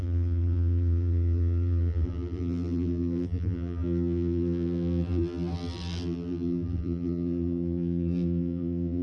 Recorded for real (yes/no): no